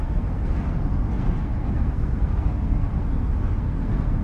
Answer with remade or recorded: remade